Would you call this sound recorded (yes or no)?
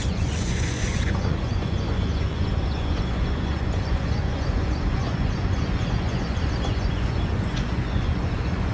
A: no